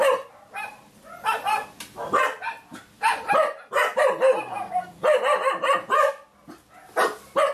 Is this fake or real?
real